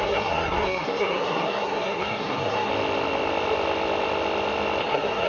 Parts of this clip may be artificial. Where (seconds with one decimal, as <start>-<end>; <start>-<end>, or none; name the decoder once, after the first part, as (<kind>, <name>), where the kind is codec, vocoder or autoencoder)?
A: 0.0-2.7 (codec, SNAC); 4.8-5.3